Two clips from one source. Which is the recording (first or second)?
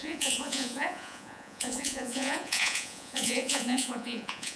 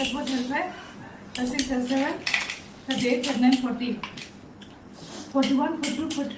second